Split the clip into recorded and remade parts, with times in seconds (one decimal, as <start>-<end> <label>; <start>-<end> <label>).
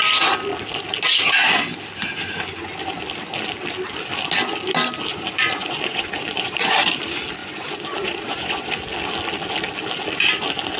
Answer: 0.0-5.1 recorded; 5.1-6.7 remade; 6.7-7.4 recorded; 7.4-8.7 remade; 8.7-10.8 recorded